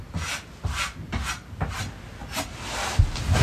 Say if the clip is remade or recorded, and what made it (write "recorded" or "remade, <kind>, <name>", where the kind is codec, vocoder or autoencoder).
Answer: recorded